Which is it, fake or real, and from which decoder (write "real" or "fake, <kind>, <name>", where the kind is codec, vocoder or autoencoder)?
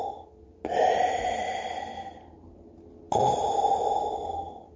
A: real